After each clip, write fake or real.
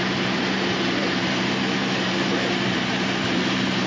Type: fake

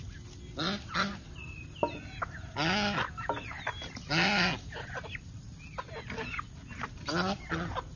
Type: real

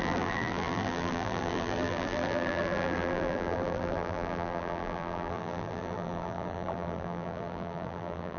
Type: fake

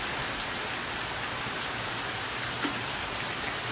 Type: real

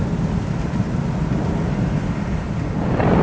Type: real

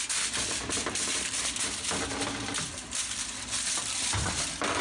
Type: real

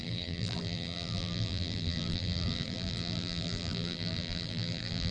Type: fake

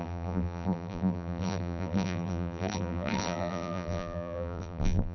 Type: fake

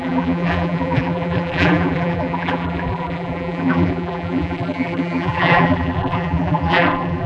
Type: fake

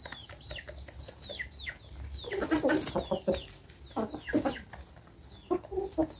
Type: real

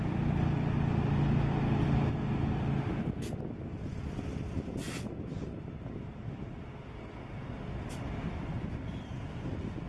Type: real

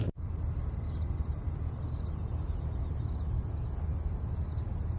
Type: real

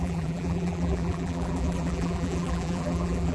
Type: fake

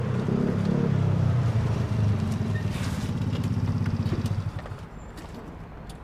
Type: fake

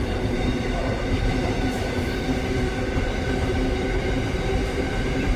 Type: fake